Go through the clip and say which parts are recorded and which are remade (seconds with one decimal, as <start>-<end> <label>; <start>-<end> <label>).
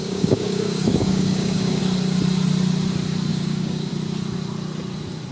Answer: 0.0-1.8 remade; 1.8-3.3 recorded; 3.3-3.9 remade; 3.9-5.3 recorded